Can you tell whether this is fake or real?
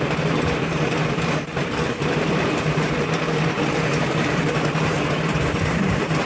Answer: fake